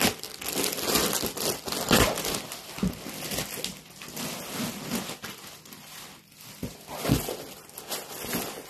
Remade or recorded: recorded